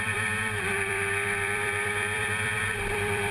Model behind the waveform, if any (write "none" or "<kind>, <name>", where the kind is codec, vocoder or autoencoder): vocoder, BigVGAN v2